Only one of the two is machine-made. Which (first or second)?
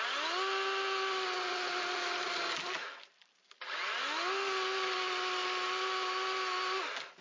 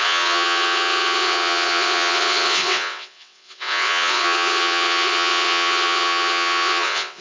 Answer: second